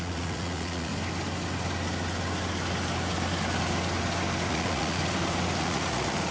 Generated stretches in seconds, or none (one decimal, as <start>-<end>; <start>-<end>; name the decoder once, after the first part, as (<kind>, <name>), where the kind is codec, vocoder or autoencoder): 0.0-0.9 (vocoder, Vocos); 4.5-5.0; 5.6-6.3